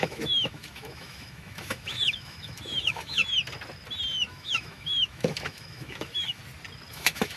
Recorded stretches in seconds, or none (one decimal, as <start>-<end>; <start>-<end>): 3.2-4.3; 6.4-6.9